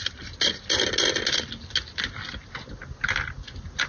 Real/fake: real